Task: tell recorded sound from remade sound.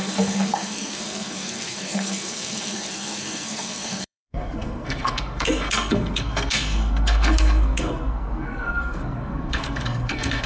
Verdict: remade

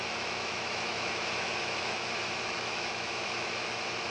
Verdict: remade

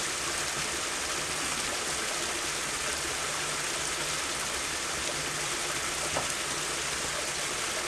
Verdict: recorded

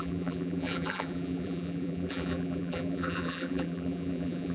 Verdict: remade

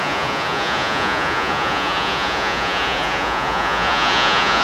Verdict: remade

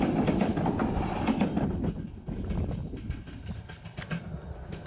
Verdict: recorded